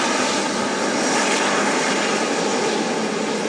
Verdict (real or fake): real